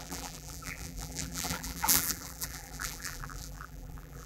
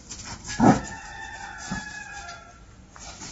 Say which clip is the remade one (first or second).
first